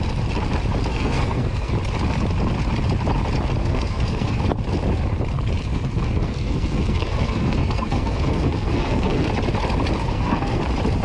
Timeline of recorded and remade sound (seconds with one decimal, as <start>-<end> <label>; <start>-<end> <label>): 0.0-0.9 recorded; 0.9-1.7 remade; 1.7-3.6 recorded; 3.6-4.4 remade; 4.4-5.7 recorded; 5.7-9.3 remade; 9.3-10.0 recorded; 10.0-10.6 remade; 10.6-11.0 recorded